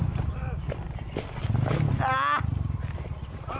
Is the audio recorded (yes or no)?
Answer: yes